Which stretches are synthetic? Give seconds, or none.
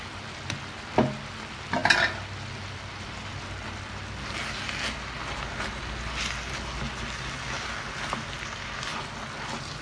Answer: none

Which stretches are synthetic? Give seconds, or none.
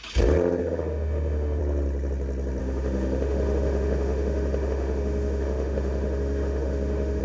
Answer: 0.6-1.6 (autoencoder, DAC-VAE); 2.6-7.2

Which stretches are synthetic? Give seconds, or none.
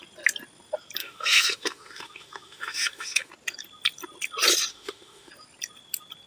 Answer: 1.0-3.3 (autoencoder, DAC-VAE); 4.7-5.3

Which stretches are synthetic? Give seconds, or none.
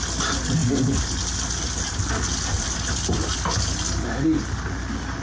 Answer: none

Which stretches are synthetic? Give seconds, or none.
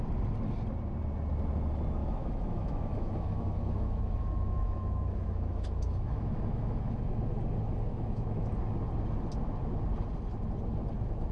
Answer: 2.0-7.0 (autoencoder, DAC-VAE); 7.9-8.5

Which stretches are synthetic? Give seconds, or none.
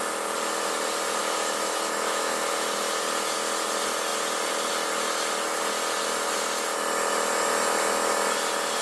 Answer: 1.2-3.0 (autoencoder, DAC-VAE)